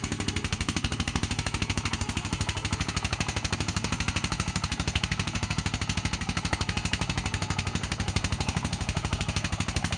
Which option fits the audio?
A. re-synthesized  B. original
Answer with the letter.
A